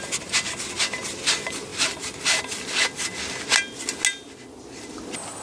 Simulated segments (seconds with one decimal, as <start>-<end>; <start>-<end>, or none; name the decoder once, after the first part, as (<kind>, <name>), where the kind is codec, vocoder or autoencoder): none